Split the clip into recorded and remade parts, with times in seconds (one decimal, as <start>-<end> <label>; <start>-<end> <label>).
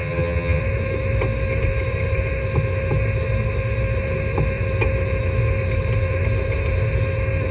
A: 0.0-0.6 remade; 0.6-7.5 recorded